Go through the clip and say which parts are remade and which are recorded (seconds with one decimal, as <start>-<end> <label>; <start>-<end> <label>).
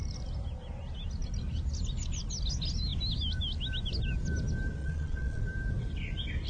0.0-4.8 recorded; 4.8-5.4 remade; 5.4-6.5 recorded